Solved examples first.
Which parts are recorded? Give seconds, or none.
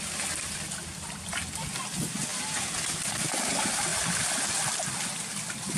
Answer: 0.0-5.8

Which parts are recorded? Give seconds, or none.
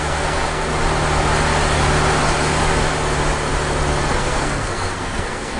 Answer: 0.7-4.1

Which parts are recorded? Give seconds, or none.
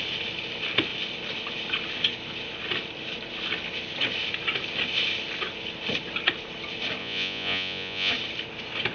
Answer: 0.0-7.0; 8.1-8.9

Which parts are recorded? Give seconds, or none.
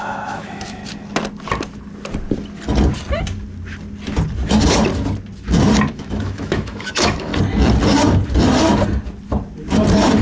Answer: 0.8-5.9; 7.3-10.2